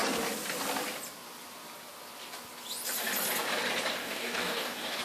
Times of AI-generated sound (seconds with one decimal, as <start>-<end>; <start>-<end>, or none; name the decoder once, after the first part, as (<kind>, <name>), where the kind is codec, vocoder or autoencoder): 4.0-5.0 (codec, DAC)